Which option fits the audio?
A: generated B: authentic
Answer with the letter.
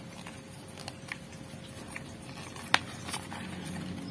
B